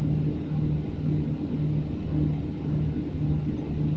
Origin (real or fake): real